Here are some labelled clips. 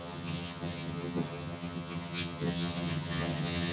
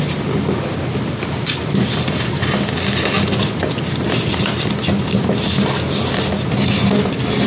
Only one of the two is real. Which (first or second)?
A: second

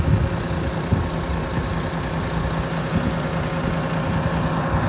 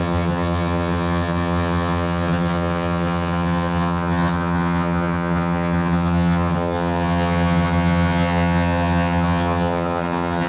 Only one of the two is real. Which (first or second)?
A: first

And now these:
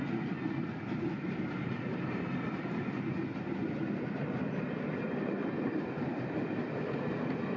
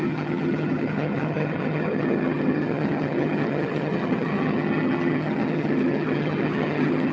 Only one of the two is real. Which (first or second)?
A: first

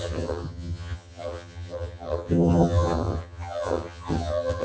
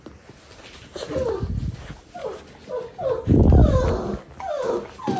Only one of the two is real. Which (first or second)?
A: second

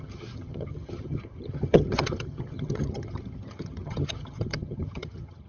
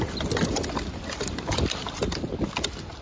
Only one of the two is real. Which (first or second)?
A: second